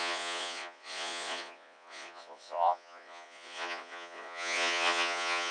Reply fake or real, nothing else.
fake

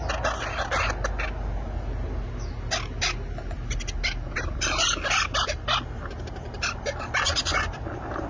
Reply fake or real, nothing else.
real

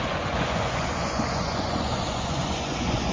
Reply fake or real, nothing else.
fake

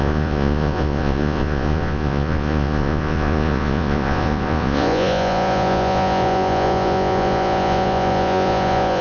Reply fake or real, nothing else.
fake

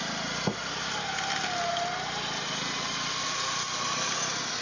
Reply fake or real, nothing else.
real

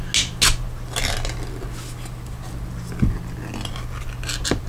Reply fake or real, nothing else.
real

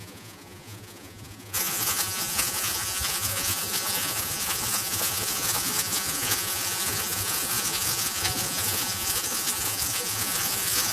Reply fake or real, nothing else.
fake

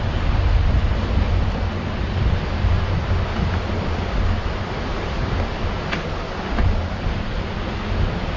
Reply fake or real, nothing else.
real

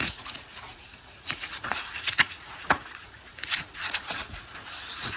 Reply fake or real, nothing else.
fake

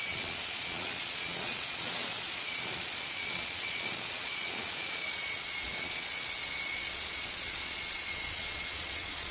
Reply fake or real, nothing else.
fake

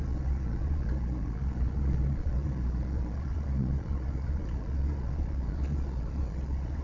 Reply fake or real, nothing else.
fake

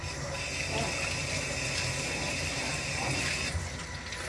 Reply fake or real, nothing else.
real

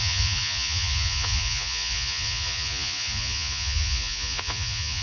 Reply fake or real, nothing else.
fake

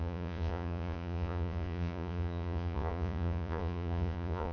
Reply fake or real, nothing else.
fake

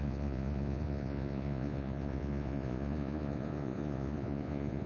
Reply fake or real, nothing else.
fake